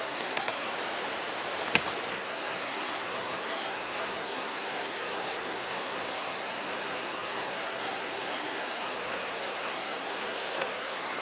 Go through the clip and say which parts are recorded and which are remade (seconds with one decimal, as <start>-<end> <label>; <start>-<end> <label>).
0.0-0.7 remade; 0.7-2.1 recorded; 2.1-11.2 remade